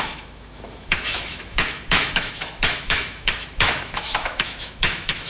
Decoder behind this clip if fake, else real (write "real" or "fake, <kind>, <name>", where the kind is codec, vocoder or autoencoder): fake, autoencoder, DAC-VAE